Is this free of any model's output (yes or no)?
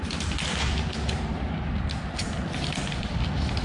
yes